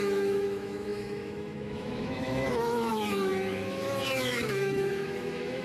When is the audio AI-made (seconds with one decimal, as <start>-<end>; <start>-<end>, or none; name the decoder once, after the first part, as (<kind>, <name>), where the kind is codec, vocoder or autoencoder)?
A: 0.0-5.6 (autoencoder, DAC-VAE)